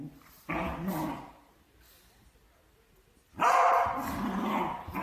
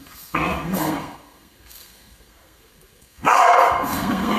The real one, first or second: first